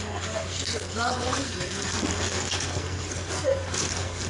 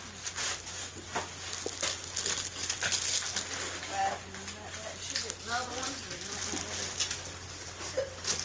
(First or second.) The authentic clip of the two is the second